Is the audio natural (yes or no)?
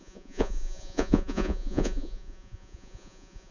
no